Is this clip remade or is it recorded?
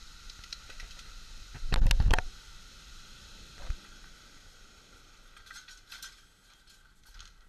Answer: recorded